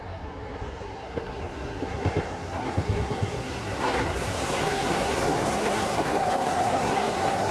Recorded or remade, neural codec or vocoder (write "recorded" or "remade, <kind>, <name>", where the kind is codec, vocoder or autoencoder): remade, codec, SNAC